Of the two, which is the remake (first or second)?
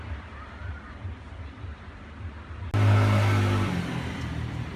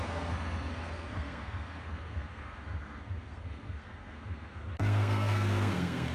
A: second